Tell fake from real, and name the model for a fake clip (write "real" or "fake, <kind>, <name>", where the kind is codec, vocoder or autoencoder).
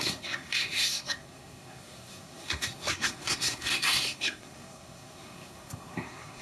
fake, codec, SNAC